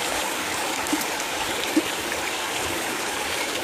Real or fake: fake